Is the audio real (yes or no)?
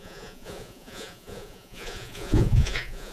no